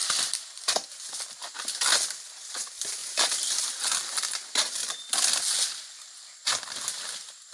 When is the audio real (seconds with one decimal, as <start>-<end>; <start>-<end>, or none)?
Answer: 0.0-3.0; 4.2-7.5